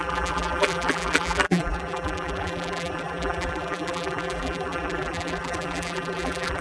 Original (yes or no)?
no